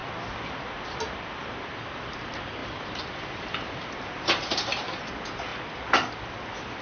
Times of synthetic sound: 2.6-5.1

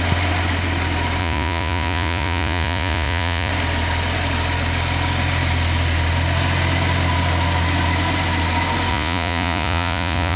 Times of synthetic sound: 1.2-3.5; 8.9-10.4

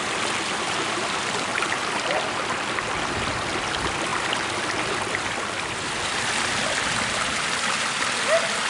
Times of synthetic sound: none

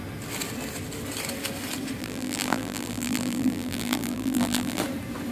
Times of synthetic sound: 2.0-4.8

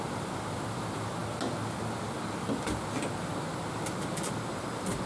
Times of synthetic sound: none

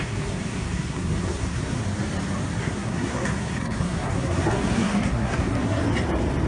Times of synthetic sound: 0.0-1.8; 2.6-5.8

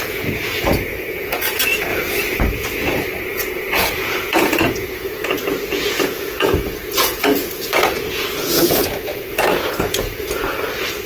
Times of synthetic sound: 0.0-1.9; 2.4-11.1